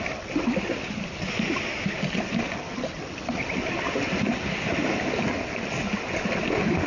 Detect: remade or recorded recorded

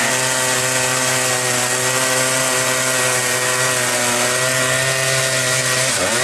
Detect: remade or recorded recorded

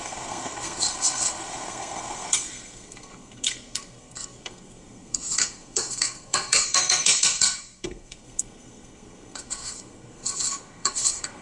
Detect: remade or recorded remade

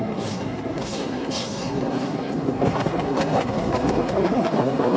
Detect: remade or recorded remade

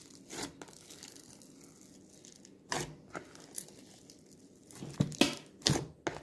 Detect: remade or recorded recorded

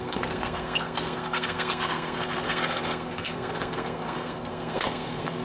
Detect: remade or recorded remade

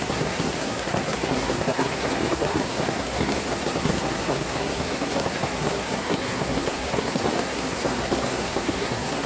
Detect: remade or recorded remade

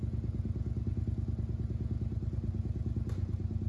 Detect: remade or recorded recorded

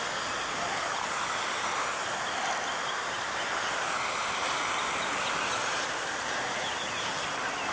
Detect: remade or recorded recorded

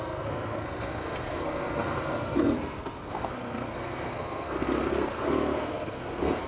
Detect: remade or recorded remade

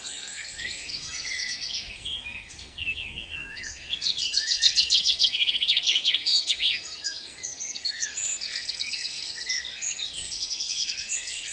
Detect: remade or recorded remade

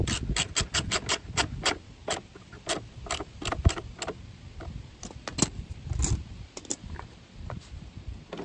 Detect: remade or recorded recorded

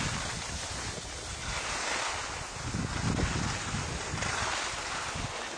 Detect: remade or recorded recorded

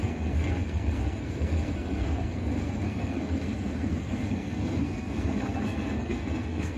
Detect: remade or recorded remade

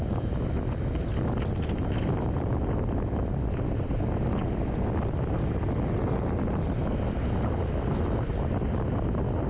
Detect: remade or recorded recorded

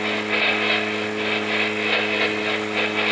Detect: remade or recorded recorded